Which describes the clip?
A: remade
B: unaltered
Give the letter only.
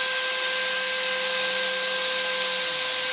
B